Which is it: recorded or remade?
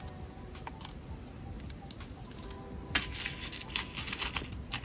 recorded